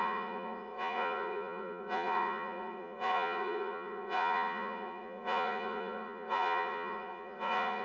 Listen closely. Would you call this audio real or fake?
fake